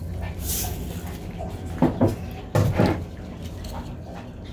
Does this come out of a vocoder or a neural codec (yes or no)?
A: no